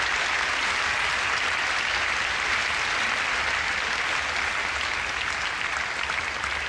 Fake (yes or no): no